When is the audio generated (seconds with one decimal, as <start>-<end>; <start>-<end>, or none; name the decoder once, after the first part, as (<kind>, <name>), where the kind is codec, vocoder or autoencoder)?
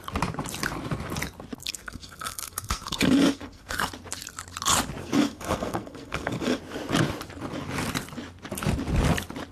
1.6-3.9 (codec, SNAC); 5.0-6.6